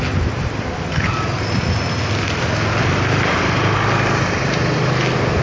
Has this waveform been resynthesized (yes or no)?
no